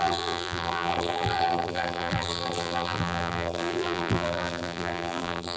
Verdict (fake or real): fake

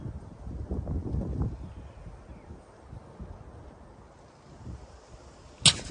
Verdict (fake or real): real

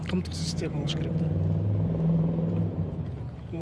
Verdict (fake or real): fake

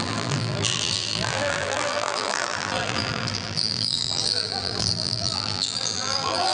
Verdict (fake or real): fake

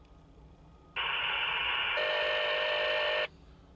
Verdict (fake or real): real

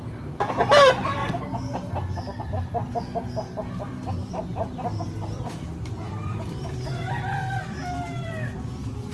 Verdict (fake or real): fake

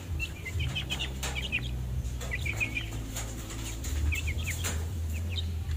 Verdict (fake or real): fake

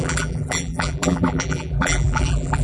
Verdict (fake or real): fake